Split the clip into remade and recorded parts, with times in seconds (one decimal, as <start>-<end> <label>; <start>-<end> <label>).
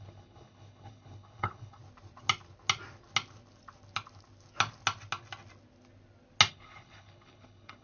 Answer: 0.0-1.8 remade; 1.8-6.5 recorded; 6.5-7.8 remade